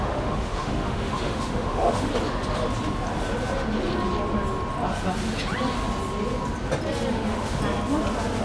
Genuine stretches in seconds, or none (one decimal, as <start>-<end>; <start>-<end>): 2.1-7.1; 7.6-8.4